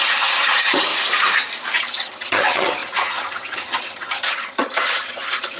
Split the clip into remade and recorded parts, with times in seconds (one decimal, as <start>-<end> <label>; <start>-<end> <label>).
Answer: 0.0-0.9 remade; 0.9-1.8 recorded; 1.8-5.6 remade